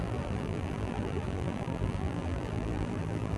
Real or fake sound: fake